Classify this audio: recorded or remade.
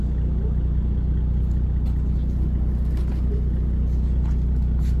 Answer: recorded